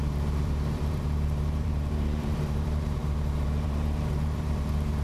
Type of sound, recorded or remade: remade